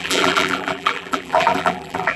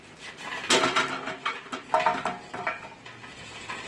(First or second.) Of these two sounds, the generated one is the first